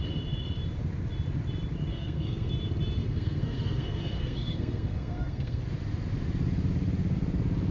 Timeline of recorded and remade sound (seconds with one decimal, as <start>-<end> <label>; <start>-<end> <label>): 0.0-1.9 recorded; 1.9-2.5 remade; 2.5-3.0 recorded; 3.0-5.6 remade; 5.6-7.7 recorded